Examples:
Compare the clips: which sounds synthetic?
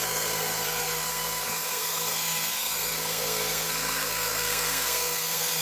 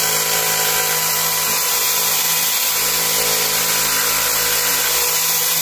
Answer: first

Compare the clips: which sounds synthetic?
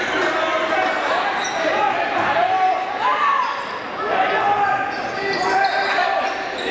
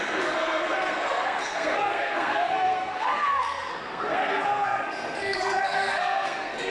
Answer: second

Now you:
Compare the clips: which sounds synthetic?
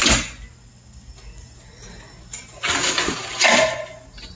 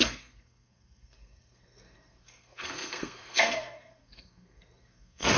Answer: second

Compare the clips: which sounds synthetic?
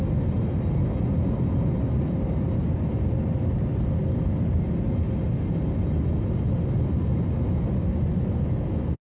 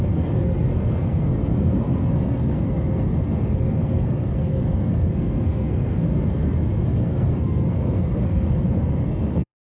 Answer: second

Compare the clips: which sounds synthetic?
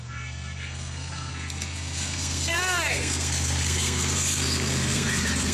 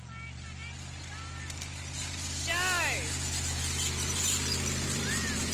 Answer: first